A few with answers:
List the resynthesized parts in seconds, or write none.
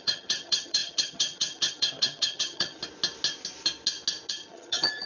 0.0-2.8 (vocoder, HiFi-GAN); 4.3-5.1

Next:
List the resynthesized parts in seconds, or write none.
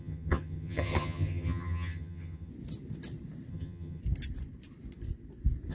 0.0-2.5 (vocoder, HiFi-GAN); 3.5-4.0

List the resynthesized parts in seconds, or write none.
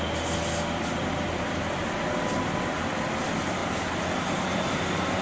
none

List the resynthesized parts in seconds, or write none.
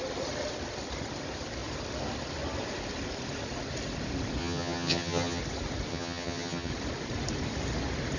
4.4-5.4 (vocoder, HiFi-GAN); 5.9-6.7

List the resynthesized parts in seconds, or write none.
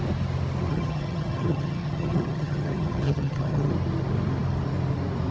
0.7-3.7 (vocoder, HiFi-GAN)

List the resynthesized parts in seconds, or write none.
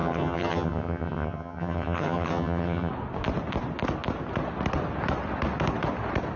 0.0-2.9 (vocoder, HiFi-GAN)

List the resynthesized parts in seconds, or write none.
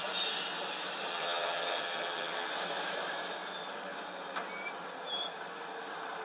1.1-2.5 (vocoder, HiFi-GAN)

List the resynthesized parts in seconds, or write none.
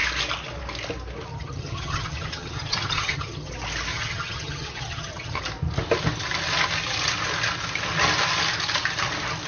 1.3-3.5 (vocoder, HiFi-GAN); 3.9-5.4